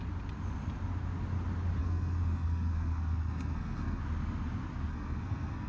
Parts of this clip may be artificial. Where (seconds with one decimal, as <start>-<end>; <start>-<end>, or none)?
1.8-4.0; 4.9-5.7